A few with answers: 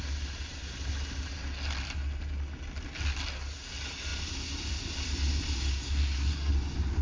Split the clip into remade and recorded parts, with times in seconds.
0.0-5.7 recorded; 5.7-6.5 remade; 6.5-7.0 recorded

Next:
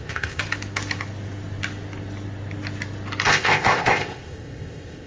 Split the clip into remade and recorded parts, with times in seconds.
0.0-0.4 remade; 0.4-3.3 recorded; 3.3-5.1 remade

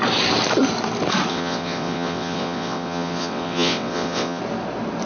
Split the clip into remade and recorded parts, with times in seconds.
0.0-1.3 recorded; 1.3-4.4 remade; 4.4-5.1 recorded

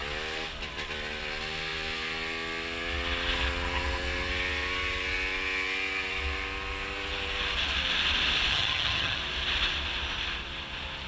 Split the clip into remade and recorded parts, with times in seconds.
0.0-8.5 recorded; 8.5-9.2 remade; 9.2-11.1 recorded

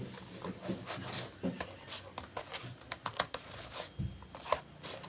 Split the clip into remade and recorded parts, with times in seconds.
0.0-3.0 recorded; 3.0-3.6 remade; 3.6-5.1 recorded

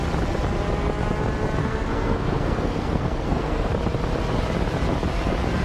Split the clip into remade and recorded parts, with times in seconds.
0.0-1.6 recorded; 1.6-3.7 remade; 3.7-5.6 recorded